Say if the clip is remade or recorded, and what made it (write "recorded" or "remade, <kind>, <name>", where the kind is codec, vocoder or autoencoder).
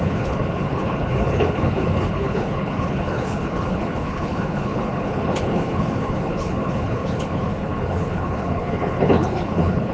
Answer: remade, codec, HILCodec